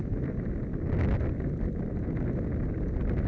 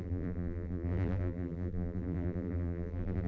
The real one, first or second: first